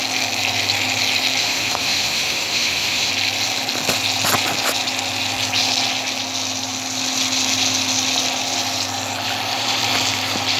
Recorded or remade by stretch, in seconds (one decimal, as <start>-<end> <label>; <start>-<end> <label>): 0.0-1.4 recorded; 1.4-3.1 remade; 3.1-10.6 recorded